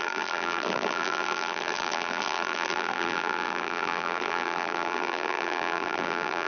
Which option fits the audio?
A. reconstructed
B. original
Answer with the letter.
A